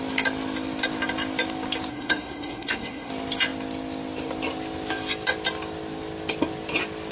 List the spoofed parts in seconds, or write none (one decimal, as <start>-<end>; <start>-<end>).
1.9-3.1